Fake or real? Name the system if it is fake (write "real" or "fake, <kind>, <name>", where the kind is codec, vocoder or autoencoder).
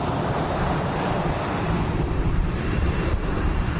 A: fake, vocoder, BigVGAN v2